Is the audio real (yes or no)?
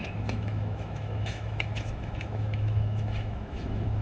no